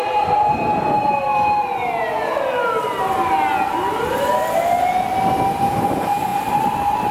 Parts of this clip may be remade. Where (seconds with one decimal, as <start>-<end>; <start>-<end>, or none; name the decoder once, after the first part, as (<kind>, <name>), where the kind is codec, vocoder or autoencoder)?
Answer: 0.0-1.3 (vocoder, BigVGAN v2); 5.6-7.1